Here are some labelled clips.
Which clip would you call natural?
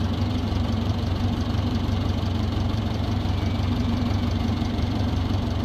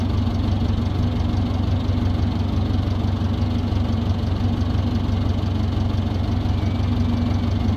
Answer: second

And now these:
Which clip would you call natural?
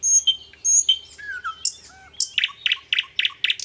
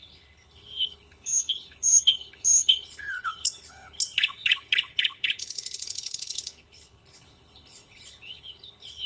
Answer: first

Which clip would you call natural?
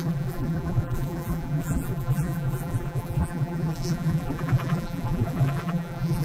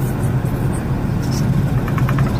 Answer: second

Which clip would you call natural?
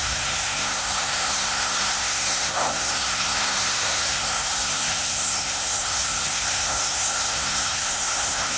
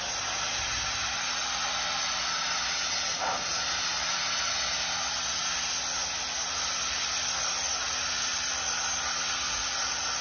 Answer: second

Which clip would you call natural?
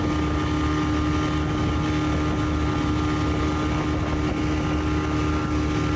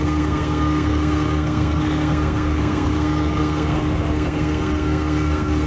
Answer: first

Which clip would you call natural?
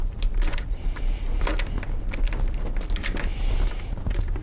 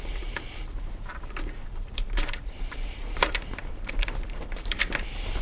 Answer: first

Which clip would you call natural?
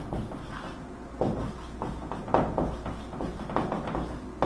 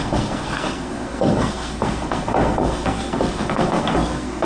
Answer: first